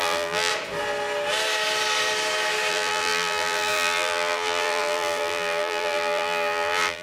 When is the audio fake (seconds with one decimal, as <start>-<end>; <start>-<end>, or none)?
0.0-0.5; 2.7-7.0